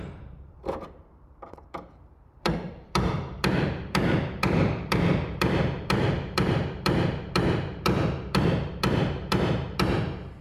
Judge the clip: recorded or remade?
remade